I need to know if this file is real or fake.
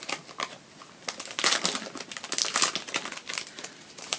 real